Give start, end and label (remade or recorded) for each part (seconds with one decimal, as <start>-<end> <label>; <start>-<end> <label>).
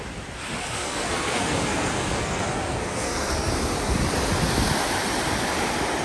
0.0-0.6 recorded; 0.6-3.5 remade; 3.5-6.0 recorded